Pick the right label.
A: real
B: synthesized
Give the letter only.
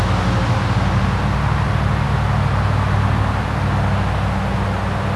A